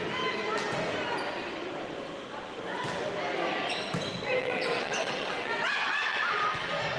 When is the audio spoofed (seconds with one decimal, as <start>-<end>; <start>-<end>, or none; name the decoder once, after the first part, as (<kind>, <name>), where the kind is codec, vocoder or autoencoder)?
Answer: 4.4-6.6 (vocoder, WaveNeXt)